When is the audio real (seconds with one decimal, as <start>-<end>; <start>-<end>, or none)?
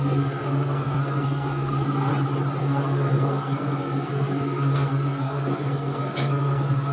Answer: 2.1-2.6